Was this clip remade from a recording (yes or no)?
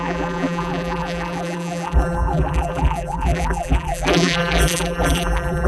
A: yes